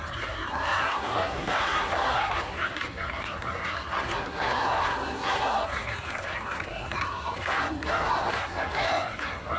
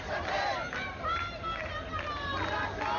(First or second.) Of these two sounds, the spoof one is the first